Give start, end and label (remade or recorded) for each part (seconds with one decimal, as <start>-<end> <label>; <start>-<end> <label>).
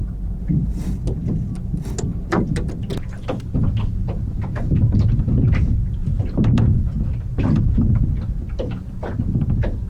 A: 0.0-1.0 remade; 1.0-6.0 recorded; 6.0-6.8 remade; 6.8-7.3 recorded; 7.3-8.0 remade; 8.0-9.9 recorded